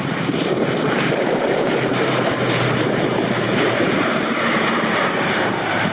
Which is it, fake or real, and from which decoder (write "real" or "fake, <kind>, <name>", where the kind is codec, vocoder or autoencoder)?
fake, vocoder, BigVGAN v2